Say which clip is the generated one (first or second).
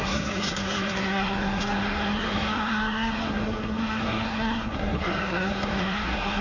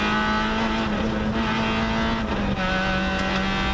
first